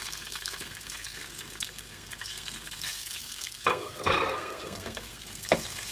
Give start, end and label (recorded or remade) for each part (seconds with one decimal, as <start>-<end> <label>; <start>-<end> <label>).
0.0-5.9 remade